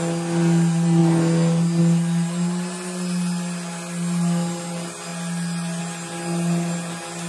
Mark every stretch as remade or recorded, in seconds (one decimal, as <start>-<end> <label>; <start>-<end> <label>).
0.0-7.3 recorded